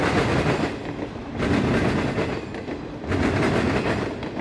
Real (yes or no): yes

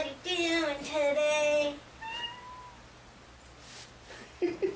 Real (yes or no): yes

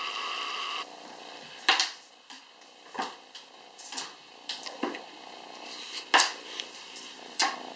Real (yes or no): yes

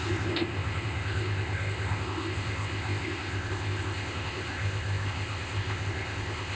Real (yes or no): no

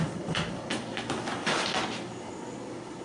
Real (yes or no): yes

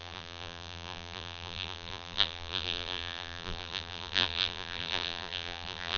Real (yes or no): no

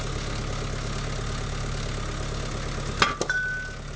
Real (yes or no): yes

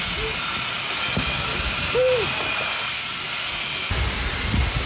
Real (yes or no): yes